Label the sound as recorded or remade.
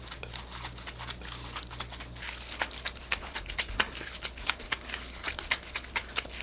recorded